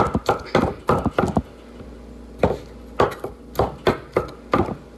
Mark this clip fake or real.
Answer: real